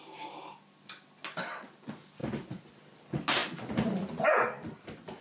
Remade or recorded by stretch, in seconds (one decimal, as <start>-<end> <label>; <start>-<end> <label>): 0.0-5.2 recorded